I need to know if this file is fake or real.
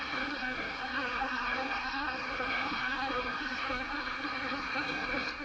fake